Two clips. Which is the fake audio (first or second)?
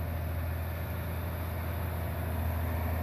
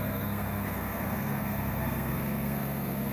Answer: second